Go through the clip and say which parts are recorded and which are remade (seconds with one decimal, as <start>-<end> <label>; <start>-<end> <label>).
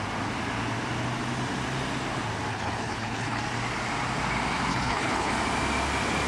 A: 0.0-2.5 recorded; 2.5-3.4 remade; 3.4-4.7 recorded; 4.7-5.3 remade; 5.3-6.3 recorded